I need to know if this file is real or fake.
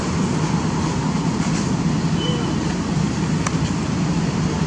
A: real